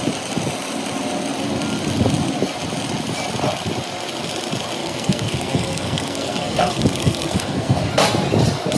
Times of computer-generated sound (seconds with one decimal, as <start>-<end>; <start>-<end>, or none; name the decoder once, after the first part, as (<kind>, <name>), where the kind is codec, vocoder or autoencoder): 4.8-7.9 (codec, SNAC)